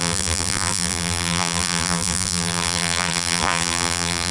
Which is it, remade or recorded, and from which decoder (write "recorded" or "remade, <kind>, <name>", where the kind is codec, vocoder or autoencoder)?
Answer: remade, vocoder, BigVGAN v2